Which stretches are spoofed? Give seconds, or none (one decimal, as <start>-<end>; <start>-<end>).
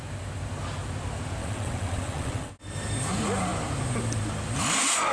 1.4-2.5